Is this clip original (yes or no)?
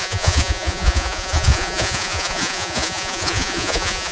no